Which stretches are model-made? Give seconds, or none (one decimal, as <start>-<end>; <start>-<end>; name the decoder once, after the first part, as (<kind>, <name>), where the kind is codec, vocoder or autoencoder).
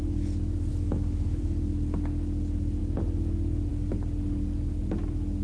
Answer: 0.7-1.4 (autoencoder, DAC-VAE)